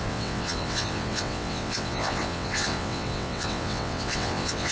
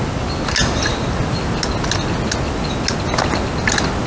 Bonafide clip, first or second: second